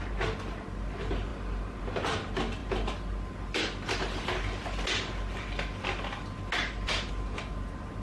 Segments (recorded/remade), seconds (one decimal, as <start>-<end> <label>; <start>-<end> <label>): 0.0-8.0 recorded